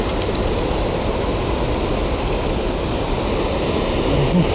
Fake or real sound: real